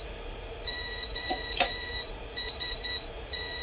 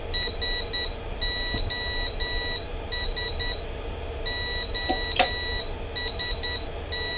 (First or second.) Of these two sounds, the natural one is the second